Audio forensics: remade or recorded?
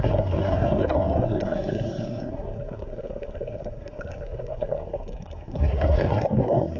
remade